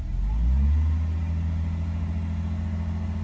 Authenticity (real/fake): real